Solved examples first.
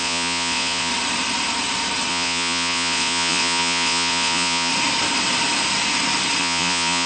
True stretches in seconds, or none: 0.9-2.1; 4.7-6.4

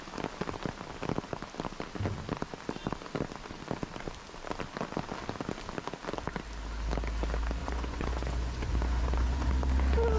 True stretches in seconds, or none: 0.0-7.6; 9.5-10.2

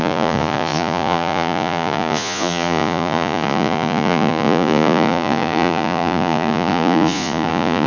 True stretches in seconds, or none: none